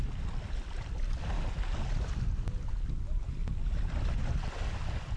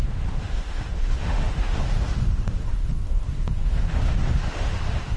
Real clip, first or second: first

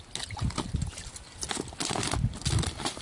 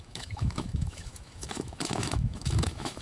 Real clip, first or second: first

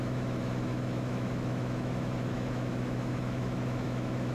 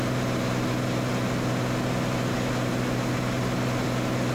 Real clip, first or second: second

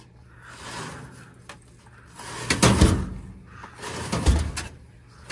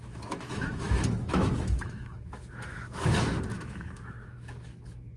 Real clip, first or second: first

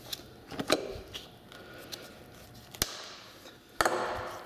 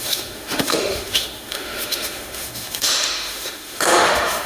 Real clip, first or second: first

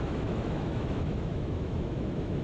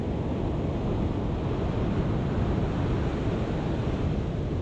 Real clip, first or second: second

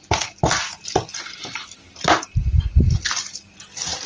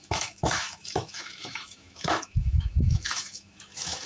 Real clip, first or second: first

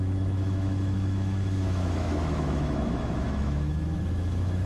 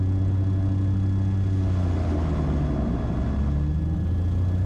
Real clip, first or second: second